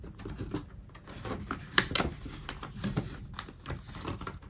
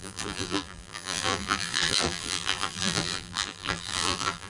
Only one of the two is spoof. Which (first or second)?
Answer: second